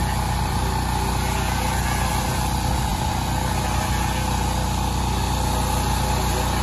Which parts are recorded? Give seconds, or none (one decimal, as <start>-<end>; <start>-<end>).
0.0-6.6